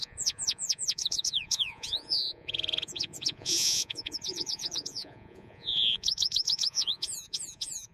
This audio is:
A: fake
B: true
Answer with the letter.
A